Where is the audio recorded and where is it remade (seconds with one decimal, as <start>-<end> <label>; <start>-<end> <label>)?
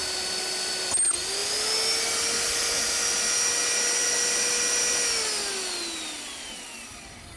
0.0-0.7 remade; 0.7-1.4 recorded; 1.4-4.5 remade; 4.5-7.4 recorded